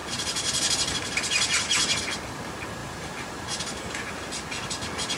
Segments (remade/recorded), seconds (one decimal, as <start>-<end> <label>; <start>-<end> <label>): 0.0-2.0 remade; 2.0-2.8 recorded; 2.8-4.3 remade; 4.3-5.2 recorded